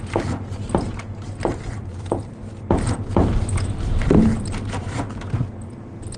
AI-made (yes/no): no